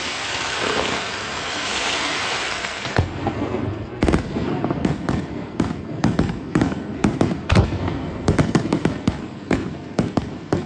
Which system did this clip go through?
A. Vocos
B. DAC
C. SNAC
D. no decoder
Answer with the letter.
C